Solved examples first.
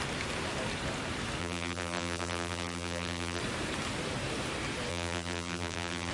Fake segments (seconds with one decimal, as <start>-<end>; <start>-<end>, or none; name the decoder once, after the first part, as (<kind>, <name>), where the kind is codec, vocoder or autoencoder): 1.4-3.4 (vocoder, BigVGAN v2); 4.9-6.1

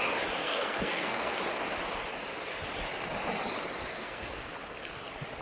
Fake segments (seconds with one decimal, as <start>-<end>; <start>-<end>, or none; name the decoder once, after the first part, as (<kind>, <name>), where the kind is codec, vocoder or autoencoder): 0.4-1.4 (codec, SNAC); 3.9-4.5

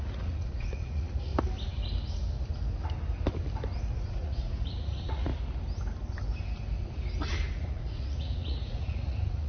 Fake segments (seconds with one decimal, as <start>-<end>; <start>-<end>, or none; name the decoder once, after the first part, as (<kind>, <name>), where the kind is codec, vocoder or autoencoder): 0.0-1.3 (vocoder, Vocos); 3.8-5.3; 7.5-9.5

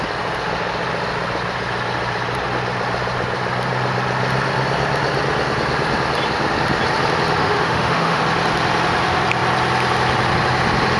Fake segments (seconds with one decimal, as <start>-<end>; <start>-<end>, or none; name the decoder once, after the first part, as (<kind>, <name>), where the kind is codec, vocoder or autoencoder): 7.4-8.2 (autoencoder, DAC-VAE)

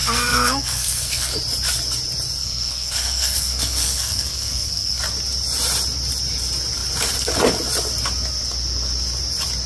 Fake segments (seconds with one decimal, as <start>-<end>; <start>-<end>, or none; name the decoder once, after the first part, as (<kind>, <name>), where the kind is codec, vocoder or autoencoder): 0.0-1.3 (codec, SNAC); 2.4-5.0